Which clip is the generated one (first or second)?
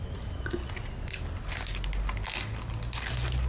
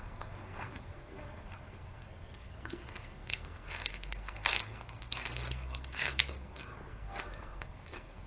second